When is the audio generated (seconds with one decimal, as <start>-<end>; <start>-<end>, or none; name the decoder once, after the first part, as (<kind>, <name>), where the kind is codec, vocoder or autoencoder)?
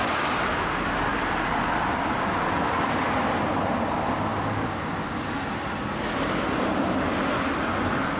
none